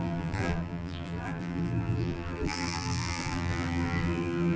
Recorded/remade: remade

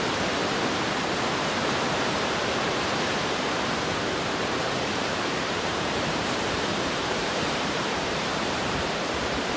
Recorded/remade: remade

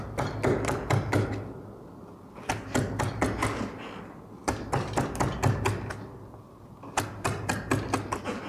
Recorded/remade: recorded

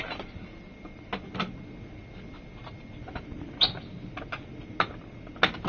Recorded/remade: recorded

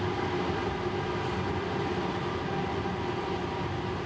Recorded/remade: recorded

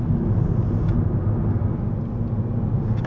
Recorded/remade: recorded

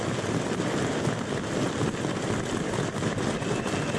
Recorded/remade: recorded